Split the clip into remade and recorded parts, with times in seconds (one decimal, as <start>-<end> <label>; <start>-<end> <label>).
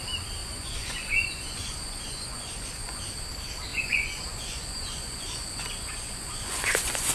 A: 0.0-0.4 recorded; 0.4-3.0 remade; 3.0-3.7 recorded; 3.7-7.1 remade